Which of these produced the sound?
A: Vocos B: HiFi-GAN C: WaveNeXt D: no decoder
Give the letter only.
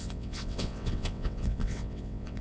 C